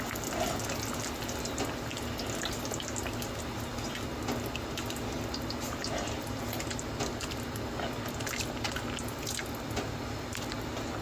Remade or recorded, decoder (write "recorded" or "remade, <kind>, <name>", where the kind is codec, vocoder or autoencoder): recorded